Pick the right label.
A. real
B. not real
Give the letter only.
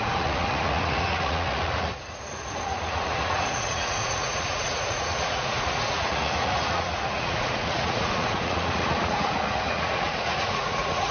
B